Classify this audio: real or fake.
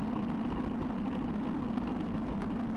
real